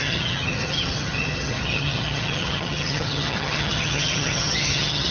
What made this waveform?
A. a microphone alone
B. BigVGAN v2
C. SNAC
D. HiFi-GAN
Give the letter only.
D